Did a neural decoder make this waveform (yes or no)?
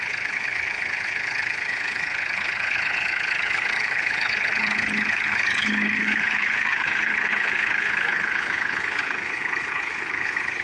yes